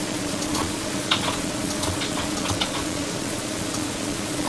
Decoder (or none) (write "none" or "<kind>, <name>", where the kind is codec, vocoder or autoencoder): vocoder, Vocos